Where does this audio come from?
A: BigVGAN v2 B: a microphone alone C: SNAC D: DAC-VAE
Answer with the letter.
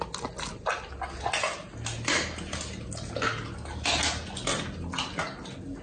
B